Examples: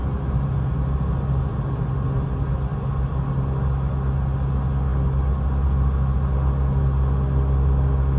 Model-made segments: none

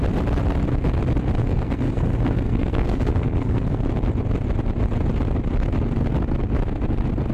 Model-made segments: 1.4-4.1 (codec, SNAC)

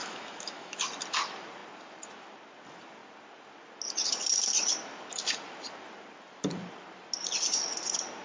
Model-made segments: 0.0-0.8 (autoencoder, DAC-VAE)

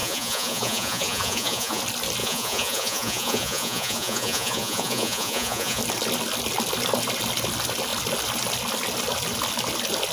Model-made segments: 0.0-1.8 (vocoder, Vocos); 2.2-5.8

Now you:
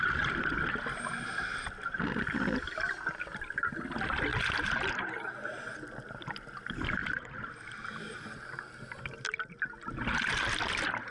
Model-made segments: none

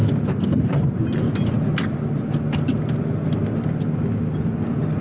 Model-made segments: none